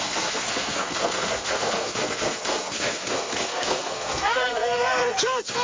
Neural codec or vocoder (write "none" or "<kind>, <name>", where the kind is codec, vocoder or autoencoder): codec, SNAC